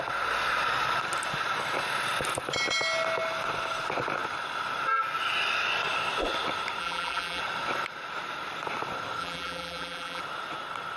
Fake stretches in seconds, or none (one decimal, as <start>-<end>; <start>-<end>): 6.8-7.4; 9.2-10.2